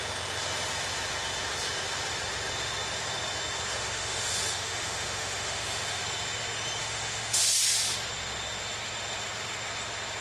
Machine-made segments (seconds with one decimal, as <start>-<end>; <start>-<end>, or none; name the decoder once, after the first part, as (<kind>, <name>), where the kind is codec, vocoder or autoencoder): 3.7-6.0 (autoencoder, DAC-VAE); 6.8-7.4